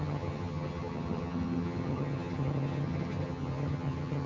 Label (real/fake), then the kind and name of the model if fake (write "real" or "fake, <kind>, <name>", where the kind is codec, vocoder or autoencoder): fake, vocoder, HiFi-GAN